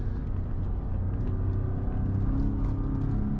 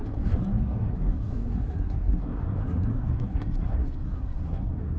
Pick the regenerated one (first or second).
second